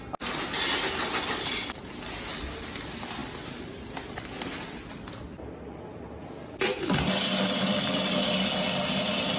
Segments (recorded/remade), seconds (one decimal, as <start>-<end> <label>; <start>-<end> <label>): 0.0-9.4 recorded